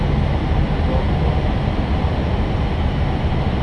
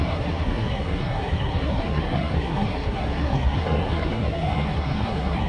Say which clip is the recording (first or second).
first